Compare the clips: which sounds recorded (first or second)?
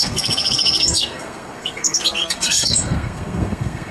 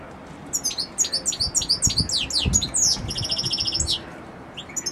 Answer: second